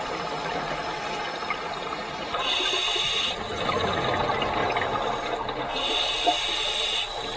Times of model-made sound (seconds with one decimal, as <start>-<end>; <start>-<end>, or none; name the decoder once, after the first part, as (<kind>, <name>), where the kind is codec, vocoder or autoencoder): none